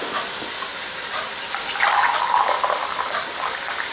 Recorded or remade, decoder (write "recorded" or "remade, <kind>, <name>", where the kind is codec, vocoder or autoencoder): recorded